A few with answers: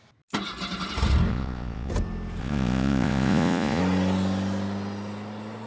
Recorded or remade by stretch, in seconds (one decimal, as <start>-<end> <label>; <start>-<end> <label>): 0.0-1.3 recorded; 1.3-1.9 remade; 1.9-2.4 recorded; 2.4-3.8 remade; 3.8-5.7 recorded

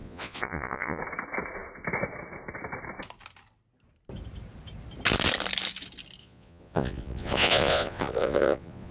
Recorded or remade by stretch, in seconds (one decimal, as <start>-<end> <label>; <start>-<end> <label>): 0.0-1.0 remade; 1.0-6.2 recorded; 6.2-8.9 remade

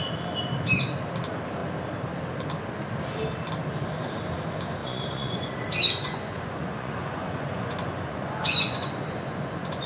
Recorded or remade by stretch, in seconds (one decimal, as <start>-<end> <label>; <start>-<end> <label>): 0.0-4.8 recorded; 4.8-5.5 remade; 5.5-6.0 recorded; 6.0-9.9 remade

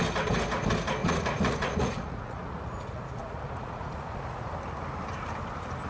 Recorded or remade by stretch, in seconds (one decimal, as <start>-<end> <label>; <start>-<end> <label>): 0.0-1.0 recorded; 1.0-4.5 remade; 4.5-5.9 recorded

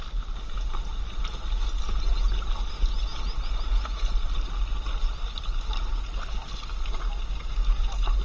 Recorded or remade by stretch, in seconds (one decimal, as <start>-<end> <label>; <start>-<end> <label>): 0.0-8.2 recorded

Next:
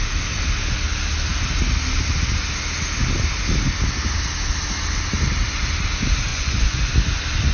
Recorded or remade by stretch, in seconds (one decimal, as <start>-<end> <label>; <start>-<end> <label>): 0.0-6.3 recorded; 6.3-6.9 remade; 6.9-7.5 recorded